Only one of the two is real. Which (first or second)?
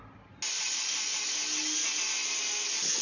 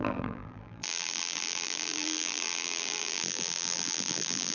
first